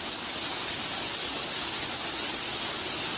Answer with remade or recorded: recorded